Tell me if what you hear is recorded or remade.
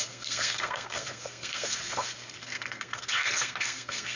remade